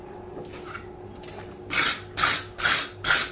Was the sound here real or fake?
real